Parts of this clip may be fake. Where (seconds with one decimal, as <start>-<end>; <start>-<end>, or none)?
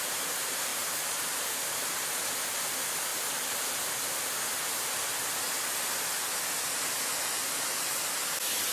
3.1-3.8